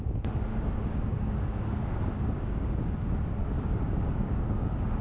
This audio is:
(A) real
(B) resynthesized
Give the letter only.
B